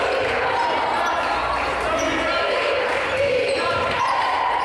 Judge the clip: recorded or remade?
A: remade